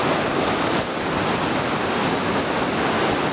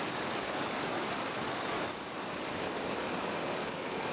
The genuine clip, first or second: first